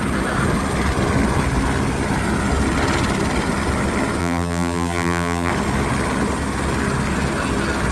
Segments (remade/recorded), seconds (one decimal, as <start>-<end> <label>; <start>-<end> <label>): 0.0-4.2 recorded; 4.2-5.5 remade; 5.5-7.9 recorded